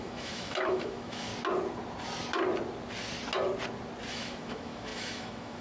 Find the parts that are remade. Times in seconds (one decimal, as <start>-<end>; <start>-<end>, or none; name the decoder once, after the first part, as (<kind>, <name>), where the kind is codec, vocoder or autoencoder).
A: 0.0-1.3 (autoencoder, DAC-VAE); 4.1-5.6